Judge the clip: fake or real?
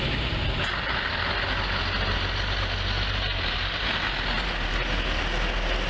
real